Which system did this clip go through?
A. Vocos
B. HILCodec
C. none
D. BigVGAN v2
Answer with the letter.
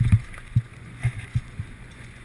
A